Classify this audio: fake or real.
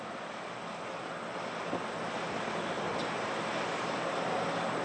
real